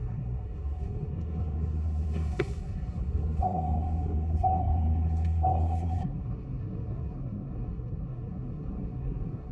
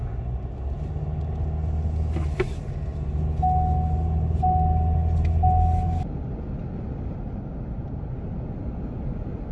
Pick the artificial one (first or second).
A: first